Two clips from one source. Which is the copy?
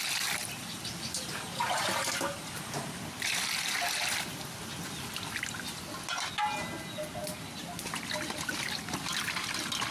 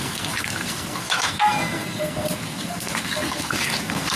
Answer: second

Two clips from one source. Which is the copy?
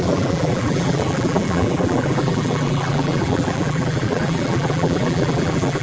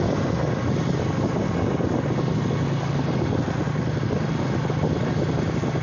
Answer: first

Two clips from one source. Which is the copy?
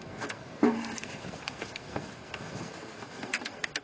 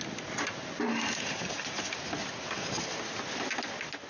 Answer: first